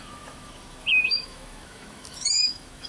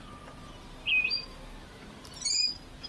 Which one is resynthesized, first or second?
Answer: first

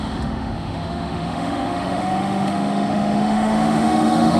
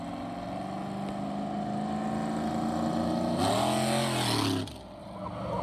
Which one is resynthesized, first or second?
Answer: first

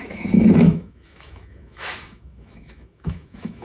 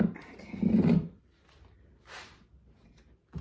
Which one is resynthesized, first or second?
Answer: first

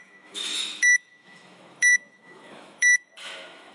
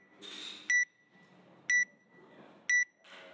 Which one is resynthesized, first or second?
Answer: first